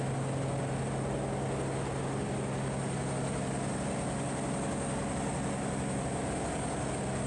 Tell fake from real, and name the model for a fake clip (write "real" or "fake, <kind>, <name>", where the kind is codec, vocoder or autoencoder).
real